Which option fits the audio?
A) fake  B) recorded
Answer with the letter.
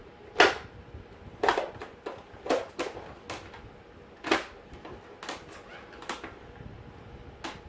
B